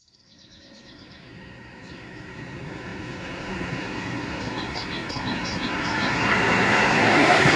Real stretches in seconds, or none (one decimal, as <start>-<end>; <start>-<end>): none